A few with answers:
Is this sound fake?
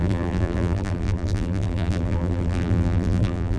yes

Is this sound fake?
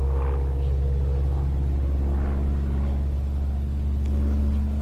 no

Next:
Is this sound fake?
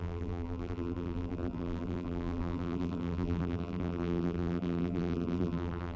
yes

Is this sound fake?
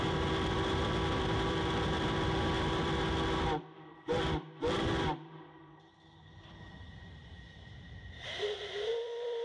yes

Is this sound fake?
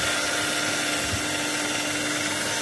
no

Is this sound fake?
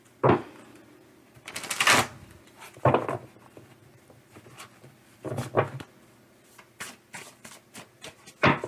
no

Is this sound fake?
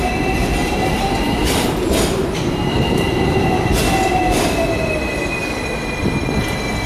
no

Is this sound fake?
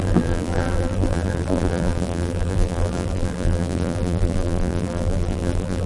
yes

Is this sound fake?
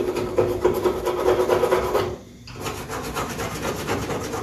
no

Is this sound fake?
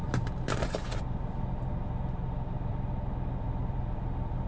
no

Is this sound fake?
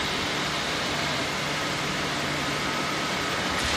yes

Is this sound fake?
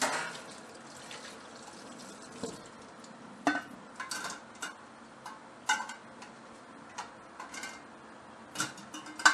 no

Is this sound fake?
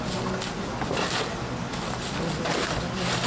no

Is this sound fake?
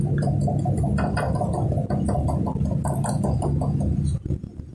no